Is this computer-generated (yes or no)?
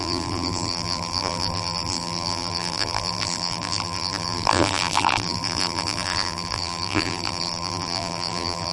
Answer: yes